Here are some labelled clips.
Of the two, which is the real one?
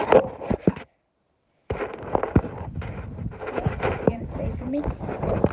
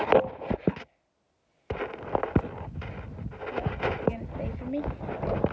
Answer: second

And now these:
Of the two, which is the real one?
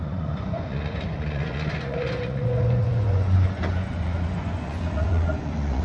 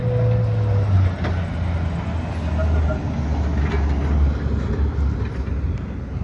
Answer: second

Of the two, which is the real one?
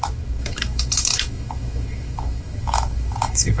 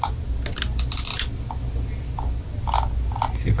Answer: second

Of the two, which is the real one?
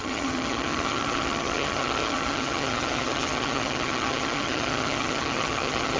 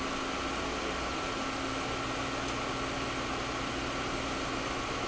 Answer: second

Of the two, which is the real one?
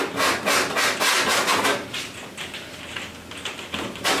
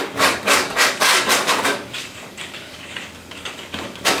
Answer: first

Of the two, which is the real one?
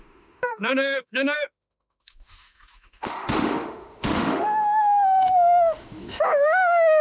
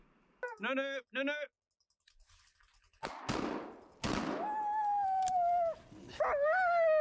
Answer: second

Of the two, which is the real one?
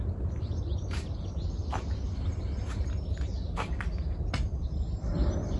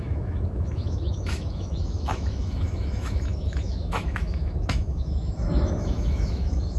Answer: first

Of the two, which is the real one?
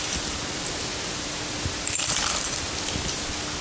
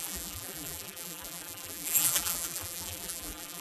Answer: first